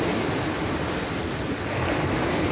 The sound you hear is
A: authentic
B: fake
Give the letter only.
A